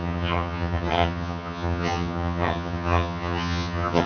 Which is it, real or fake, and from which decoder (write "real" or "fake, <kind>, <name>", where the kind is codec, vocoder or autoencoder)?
fake, vocoder, HiFi-GAN